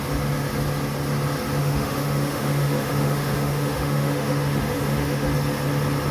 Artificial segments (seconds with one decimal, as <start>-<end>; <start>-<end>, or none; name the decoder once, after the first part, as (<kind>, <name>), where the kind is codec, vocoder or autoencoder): 1.6-5.3 (autoencoder, DAC-VAE)